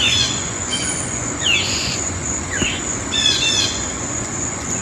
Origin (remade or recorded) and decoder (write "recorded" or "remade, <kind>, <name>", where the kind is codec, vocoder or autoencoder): remade, vocoder, Vocos